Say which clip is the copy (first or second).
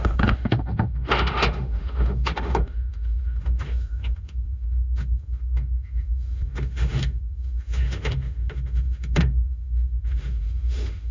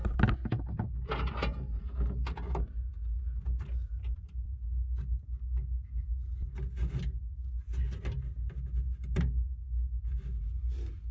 first